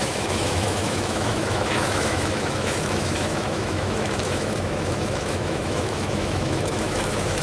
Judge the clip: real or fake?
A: fake